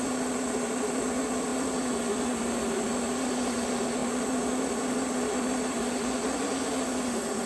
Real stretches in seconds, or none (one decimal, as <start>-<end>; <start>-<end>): 0.0-7.5